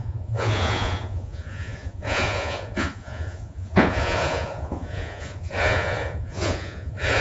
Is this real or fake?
fake